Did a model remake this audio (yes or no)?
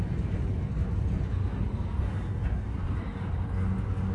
no